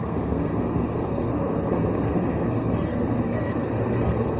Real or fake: fake